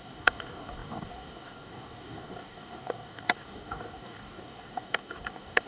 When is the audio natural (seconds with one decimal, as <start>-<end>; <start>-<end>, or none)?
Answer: none